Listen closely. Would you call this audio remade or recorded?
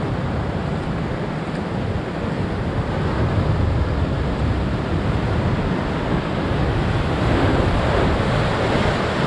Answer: recorded